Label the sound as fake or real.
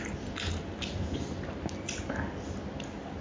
real